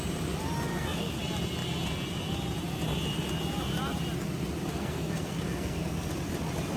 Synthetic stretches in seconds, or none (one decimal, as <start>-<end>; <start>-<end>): 0.7-1.2; 4.7-6.1